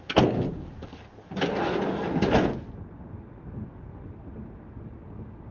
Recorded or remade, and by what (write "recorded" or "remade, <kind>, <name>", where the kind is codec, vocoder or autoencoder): recorded